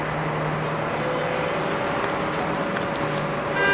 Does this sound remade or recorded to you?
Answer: recorded